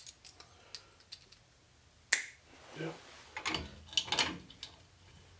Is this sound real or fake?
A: real